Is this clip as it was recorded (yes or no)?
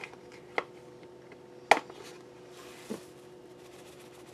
yes